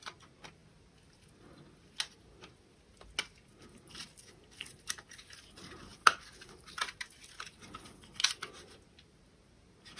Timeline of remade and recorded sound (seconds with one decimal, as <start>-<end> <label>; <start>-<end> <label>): 0.0-10.0 recorded

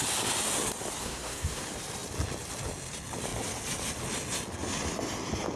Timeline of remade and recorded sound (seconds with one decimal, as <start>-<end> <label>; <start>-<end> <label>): 0.0-1.0 recorded; 1.0-1.6 remade; 1.6-5.6 recorded

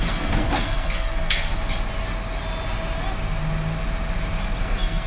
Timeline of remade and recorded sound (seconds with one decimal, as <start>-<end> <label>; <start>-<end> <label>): 0.0-1.5 remade; 1.5-4.6 recorded; 4.6-5.1 remade

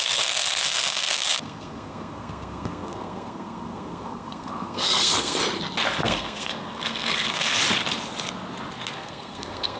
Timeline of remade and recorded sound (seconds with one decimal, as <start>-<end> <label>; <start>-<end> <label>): 0.0-5.4 remade; 5.4-6.0 recorded; 6.0-7.6 remade; 7.6-8.9 recorded; 8.9-9.8 remade

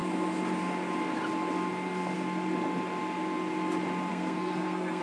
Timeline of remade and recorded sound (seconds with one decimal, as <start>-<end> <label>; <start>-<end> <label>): 0.0-4.1 recorded; 4.1-5.0 remade